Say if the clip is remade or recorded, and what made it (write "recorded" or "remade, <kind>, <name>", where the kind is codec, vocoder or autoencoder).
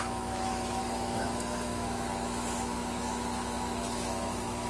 remade, autoencoder, DAC-VAE